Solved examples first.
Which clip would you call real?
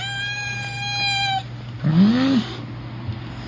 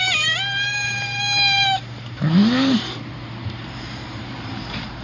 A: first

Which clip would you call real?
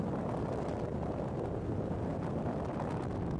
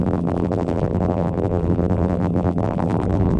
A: first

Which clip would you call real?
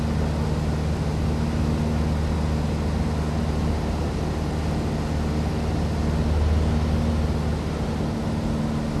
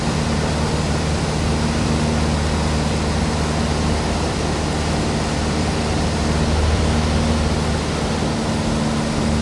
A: first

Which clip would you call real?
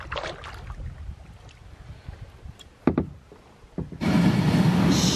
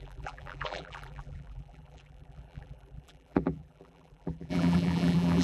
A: first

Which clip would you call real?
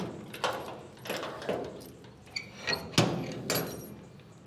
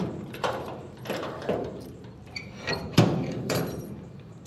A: first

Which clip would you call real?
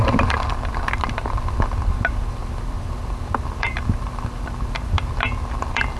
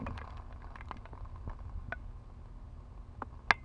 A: second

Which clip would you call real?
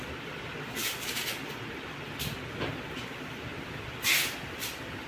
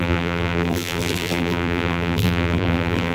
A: first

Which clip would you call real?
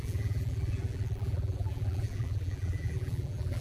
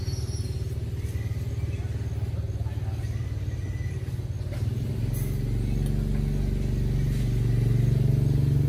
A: second